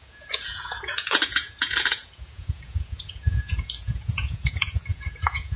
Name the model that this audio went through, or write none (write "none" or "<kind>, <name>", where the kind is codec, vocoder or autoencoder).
vocoder, Vocos